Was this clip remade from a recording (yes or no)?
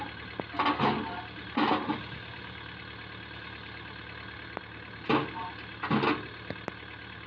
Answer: no